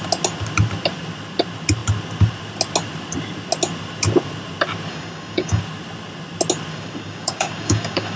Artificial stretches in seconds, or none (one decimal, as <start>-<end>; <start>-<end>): 4.9-5.6; 6.7-8.2